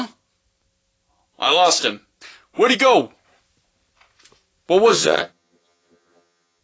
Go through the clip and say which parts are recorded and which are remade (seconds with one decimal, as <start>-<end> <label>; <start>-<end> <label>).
0.0-4.9 recorded; 4.9-6.6 remade